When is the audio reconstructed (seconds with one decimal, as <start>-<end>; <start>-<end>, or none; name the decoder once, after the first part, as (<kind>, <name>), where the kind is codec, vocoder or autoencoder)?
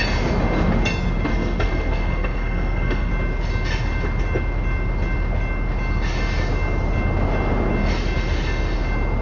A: 1.3-3.1 (codec, SNAC)